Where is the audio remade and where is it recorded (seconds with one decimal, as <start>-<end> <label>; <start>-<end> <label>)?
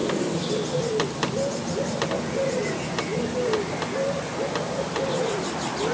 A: 0.0-0.5 remade; 0.5-5.9 recorded